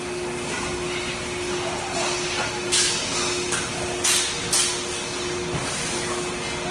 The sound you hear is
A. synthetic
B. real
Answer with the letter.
B